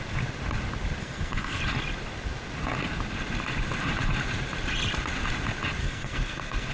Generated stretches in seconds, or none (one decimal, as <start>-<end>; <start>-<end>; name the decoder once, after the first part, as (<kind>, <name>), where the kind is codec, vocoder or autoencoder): 1.0-1.6 (codec, SNAC); 5.8-6.7